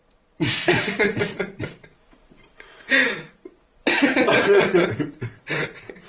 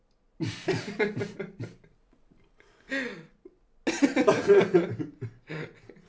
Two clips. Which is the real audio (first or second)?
second